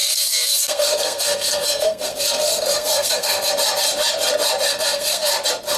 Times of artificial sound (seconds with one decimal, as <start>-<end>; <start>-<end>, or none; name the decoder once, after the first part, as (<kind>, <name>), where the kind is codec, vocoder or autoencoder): 0.0-3.5 (codec, SNAC); 4.7-5.3